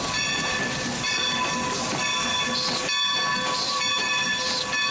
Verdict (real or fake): real